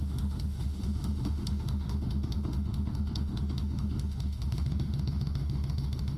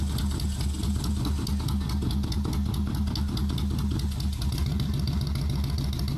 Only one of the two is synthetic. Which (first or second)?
first